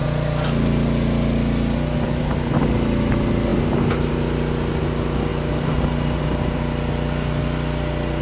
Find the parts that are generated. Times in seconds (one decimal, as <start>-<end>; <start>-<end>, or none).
none